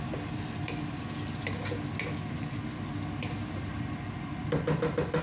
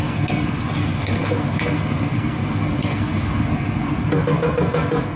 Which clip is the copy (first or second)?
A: second